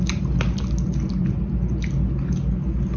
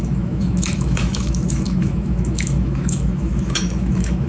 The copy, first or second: second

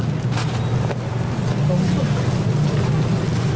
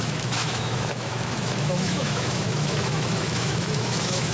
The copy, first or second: second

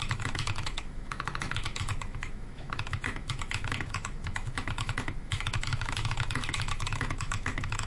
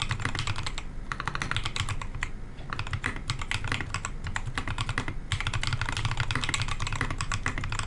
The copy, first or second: first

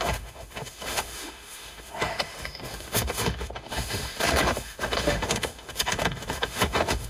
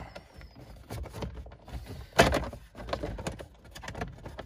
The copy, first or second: first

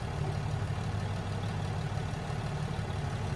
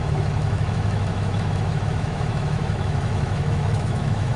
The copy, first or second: second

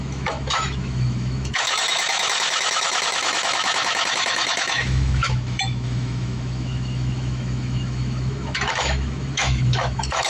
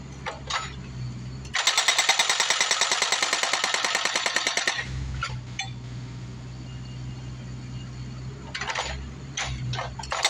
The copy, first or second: first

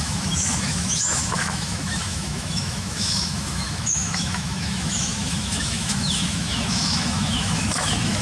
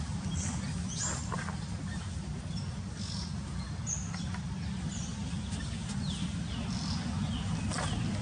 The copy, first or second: first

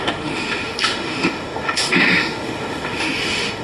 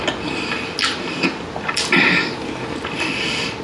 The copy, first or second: first